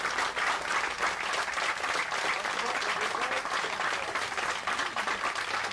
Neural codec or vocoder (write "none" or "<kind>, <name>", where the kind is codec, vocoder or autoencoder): none